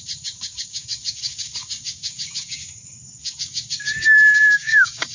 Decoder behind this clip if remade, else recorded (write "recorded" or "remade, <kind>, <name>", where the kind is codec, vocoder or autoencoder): remade, codec, DAC